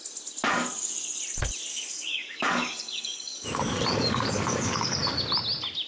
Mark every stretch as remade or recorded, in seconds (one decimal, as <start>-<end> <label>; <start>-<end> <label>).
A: 0.0-0.5 recorded; 0.5-1.2 remade; 1.2-1.7 recorded; 1.7-5.2 remade; 5.2-5.9 recorded